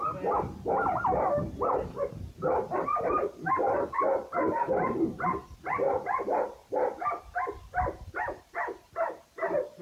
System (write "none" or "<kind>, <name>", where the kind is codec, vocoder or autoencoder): vocoder, BigVGAN v2